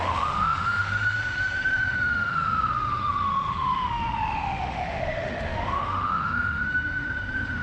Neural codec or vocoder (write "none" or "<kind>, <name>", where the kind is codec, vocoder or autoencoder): autoencoder, DAC-VAE